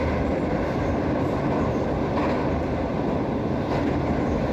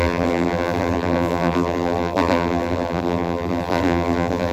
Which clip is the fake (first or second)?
second